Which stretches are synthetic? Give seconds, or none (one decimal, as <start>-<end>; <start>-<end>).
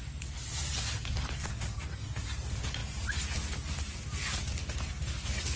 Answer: none